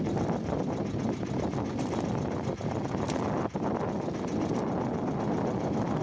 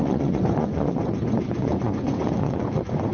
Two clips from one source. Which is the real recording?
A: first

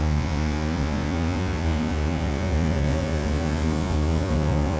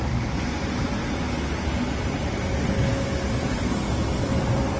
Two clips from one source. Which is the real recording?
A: second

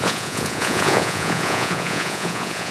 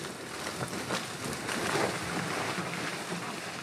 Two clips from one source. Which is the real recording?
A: second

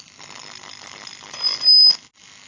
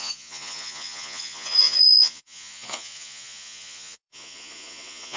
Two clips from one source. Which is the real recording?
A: first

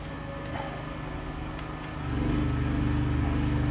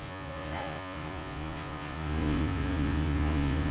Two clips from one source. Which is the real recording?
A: first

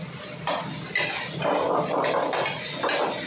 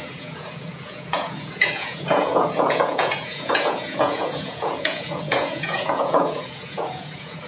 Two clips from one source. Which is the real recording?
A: first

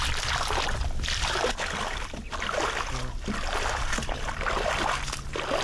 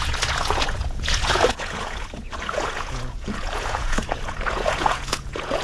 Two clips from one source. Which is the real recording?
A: first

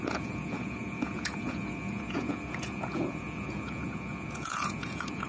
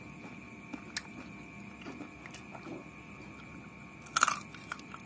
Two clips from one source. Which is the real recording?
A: second